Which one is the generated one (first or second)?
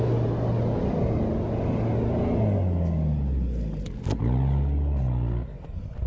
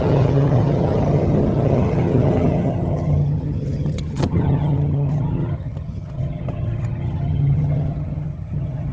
second